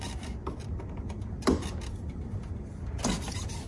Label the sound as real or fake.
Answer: real